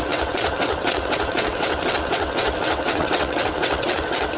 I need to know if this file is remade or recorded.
remade